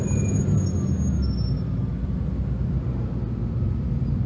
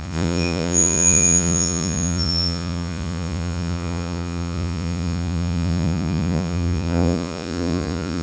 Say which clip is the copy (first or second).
second